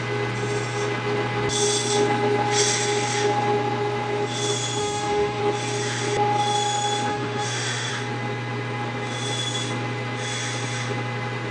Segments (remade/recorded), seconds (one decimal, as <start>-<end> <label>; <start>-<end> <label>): 0.0-4.8 recorded; 4.8-5.4 remade; 5.4-7.1 recorded; 7.1-7.9 remade; 7.9-11.5 recorded